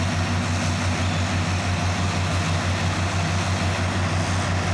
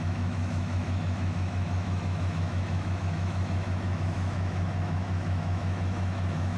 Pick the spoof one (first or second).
second